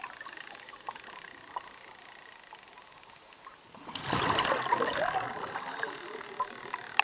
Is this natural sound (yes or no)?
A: yes